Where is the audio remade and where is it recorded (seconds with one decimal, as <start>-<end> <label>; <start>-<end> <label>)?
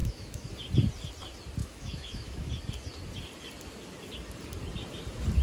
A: 0.0-0.5 remade; 0.5-1.6 recorded; 1.6-2.5 remade; 2.5-5.4 recorded